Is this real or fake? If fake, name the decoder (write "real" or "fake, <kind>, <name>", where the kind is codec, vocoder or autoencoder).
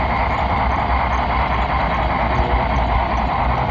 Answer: real